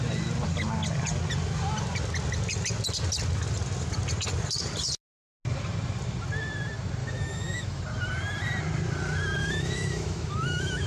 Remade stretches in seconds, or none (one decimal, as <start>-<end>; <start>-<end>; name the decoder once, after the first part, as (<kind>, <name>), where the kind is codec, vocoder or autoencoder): 7.0-7.8 (autoencoder, DAC-VAE); 9.4-10.9